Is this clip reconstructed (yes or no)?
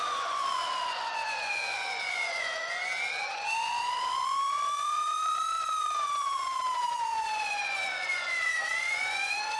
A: yes